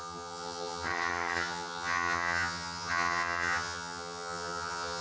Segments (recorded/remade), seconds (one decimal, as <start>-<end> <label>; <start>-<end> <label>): 0.0-5.0 remade